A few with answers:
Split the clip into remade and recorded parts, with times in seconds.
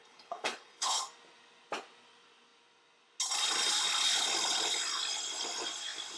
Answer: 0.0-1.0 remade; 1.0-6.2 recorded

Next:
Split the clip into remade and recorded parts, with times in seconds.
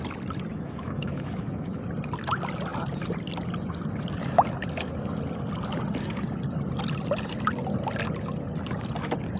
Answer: 0.0-0.5 recorded; 0.5-1.8 remade; 1.8-9.4 recorded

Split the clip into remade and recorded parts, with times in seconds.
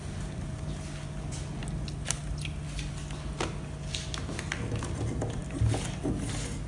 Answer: 0.0-6.7 recorded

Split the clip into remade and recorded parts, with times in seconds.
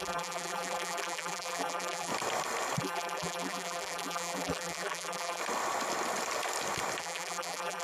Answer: 0.0-2.1 remade; 2.1-2.8 recorded; 2.8-5.4 remade; 5.4-7.0 recorded; 7.0-7.8 remade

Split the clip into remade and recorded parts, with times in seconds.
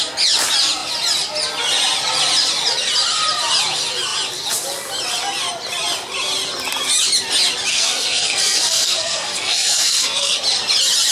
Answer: 0.0-7.7 recorded; 7.7-10.4 remade; 10.4-11.1 recorded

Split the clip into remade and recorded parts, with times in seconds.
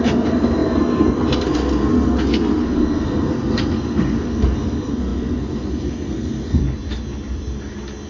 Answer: 0.0-6.6 remade; 6.6-8.1 recorded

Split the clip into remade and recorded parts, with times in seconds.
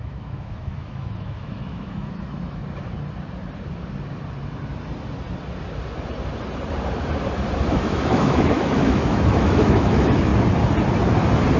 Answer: 0.0-2.6 remade; 2.6-7.7 recorded; 7.7-10.3 remade; 10.3-11.6 recorded